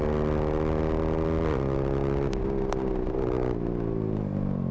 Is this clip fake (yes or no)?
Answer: no